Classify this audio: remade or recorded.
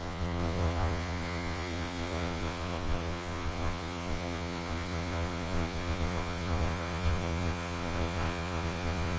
remade